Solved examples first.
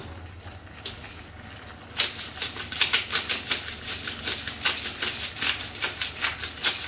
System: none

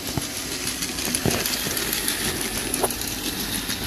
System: vocoder, BigVGAN v2